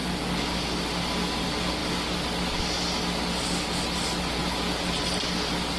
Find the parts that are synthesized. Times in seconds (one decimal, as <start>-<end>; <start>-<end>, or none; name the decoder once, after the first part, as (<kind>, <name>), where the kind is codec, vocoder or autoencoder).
0.0-1.0 (vocoder, BigVGAN v2); 1.8-3.8; 4.4-5.2